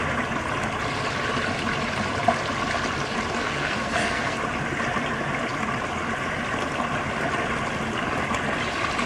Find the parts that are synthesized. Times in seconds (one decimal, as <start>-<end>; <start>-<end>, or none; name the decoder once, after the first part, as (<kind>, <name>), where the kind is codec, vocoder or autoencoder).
3.4-4.4 (codec, SNAC)